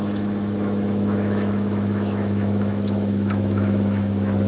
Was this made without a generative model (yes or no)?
no